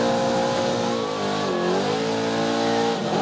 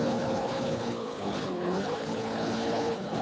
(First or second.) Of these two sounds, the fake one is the second